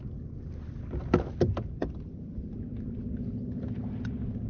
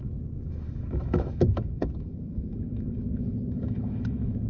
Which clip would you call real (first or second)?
first